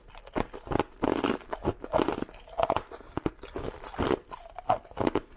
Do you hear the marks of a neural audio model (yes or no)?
no